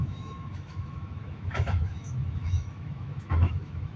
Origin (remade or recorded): remade